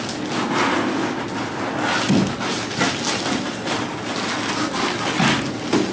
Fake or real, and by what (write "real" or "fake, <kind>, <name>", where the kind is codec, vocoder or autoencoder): real